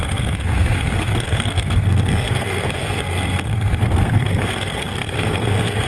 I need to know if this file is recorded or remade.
remade